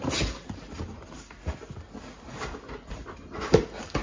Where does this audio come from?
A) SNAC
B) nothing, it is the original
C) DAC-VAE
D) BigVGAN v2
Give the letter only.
B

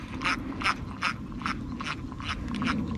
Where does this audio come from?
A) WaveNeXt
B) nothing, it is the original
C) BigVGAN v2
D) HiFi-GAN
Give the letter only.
B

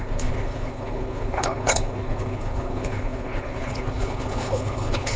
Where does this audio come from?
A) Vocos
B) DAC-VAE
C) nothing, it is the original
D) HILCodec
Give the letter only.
D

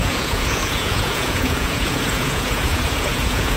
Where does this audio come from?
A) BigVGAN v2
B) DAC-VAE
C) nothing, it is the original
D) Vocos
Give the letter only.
D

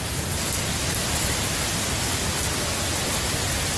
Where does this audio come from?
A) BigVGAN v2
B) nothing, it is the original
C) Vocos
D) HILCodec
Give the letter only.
B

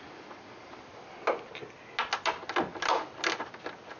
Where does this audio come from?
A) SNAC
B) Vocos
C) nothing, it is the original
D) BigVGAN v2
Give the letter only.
C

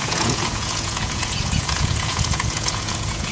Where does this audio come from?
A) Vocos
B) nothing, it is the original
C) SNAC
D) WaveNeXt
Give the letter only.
A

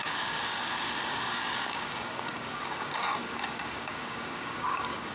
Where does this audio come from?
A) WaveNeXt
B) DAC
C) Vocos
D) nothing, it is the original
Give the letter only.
B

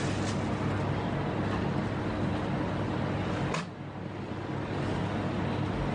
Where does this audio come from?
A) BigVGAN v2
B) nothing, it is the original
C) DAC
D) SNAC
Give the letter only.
B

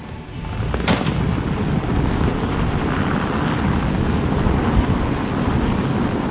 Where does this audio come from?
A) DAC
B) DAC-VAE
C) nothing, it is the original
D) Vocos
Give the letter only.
C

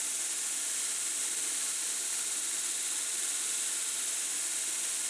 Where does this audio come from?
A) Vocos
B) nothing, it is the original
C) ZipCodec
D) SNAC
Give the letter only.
B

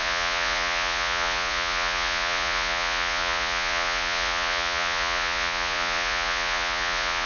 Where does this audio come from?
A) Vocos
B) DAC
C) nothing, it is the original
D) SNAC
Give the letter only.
A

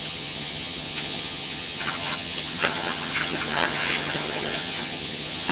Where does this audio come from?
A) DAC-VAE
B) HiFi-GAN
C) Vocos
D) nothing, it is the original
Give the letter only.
B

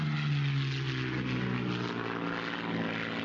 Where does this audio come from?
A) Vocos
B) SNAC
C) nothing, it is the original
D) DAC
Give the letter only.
C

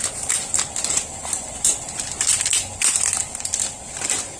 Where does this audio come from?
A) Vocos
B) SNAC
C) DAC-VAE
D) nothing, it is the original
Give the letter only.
D